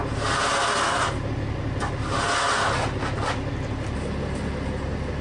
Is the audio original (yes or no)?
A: yes